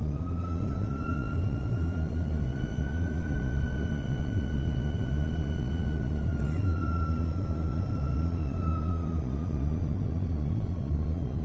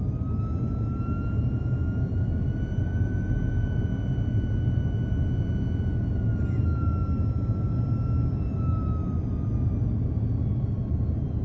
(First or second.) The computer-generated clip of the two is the first